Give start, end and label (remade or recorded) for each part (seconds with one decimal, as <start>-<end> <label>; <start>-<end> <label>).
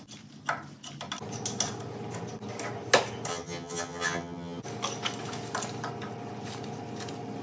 0.0-3.3 recorded; 3.3-4.6 remade; 4.6-7.4 recorded